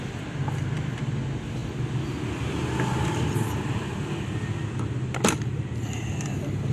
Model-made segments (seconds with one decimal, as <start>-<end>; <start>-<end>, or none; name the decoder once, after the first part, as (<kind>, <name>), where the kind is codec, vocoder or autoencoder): none